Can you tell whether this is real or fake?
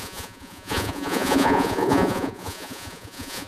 fake